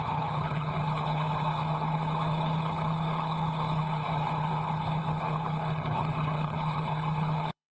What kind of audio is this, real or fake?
fake